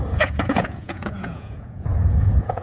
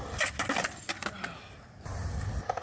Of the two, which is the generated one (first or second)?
first